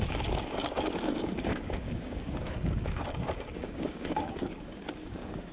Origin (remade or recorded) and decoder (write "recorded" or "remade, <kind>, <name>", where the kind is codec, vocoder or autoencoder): remade, codec, DAC